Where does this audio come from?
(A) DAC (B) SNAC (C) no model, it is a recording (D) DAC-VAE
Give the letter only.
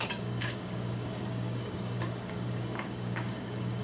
A